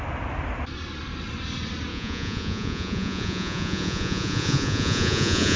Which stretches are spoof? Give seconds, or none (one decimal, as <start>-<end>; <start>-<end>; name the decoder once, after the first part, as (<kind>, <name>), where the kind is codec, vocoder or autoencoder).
1.9-5.6 (vocoder, Vocos)